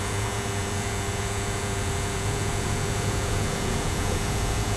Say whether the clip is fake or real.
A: fake